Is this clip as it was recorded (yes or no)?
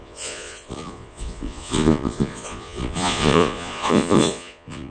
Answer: no